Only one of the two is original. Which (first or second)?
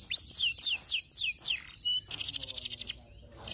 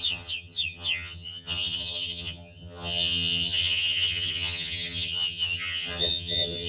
first